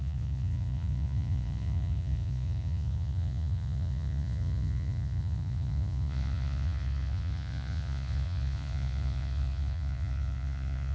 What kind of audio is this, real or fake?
fake